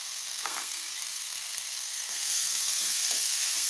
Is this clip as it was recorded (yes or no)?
no